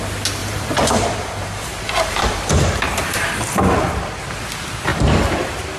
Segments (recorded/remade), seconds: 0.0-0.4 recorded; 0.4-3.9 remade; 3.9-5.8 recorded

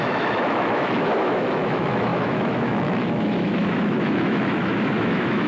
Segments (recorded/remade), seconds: 0.0-5.5 remade

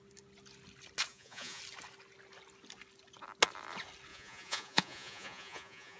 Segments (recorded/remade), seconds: 0.0-1.1 recorded; 1.1-1.6 remade; 1.6-4.1 recorded; 4.1-6.0 remade